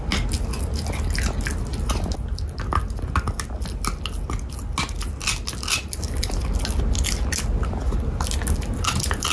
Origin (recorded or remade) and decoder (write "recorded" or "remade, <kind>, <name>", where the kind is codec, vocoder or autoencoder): recorded